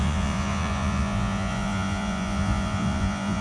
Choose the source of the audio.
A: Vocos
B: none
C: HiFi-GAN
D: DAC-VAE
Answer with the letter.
A